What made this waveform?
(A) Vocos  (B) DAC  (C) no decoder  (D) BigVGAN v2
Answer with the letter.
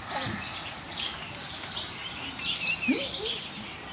D